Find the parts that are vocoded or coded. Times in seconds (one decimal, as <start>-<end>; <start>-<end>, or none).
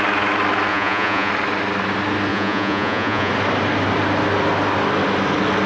0.7-1.3; 2.3-3.3